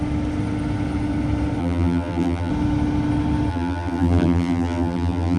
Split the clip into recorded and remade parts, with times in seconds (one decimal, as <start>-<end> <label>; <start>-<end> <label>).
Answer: 0.0-1.6 recorded; 1.6-2.5 remade; 2.5-3.5 recorded; 3.5-5.4 remade